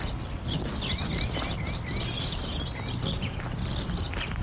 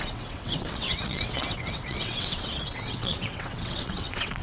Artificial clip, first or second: second